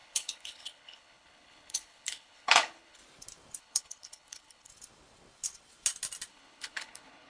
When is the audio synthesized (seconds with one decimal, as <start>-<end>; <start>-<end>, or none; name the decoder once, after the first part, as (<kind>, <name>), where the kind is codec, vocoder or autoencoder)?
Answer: 0.0-3.0 (codec, HILCodec); 3.6-4.7; 6.3-7.3